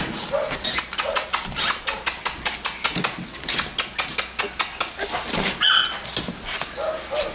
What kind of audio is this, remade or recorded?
recorded